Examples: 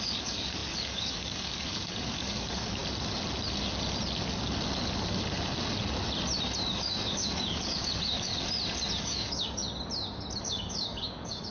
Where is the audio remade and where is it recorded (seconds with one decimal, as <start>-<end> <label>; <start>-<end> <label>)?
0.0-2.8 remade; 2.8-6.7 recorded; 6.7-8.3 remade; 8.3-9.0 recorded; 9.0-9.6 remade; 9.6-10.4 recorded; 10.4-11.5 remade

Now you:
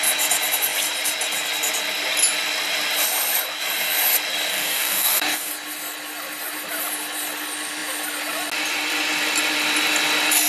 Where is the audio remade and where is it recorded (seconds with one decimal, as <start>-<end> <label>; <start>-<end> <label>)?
0.0-4.5 recorded; 4.5-5.5 remade; 5.5-10.5 recorded

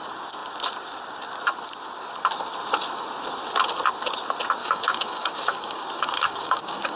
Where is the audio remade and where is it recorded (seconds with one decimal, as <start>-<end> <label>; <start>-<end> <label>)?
0.0-4.6 recorded; 4.6-7.0 remade